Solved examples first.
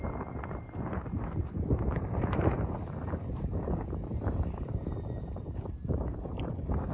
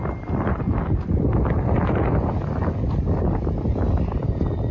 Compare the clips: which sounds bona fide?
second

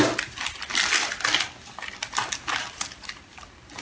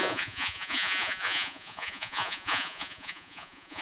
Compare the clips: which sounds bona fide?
first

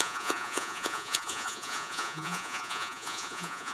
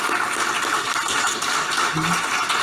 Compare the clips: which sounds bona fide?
second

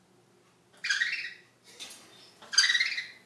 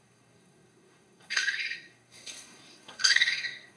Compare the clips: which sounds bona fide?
first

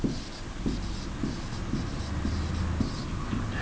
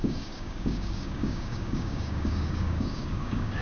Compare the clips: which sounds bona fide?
first